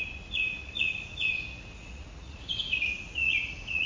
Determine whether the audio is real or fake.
fake